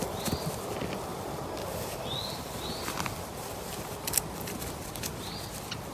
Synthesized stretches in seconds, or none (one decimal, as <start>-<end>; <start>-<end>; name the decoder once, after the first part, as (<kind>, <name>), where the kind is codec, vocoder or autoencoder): none